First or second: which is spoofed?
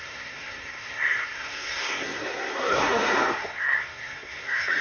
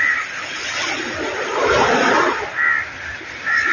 first